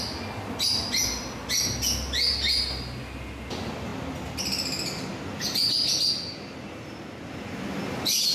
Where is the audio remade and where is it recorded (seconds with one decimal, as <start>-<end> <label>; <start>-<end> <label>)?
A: 0.0-8.3 recorded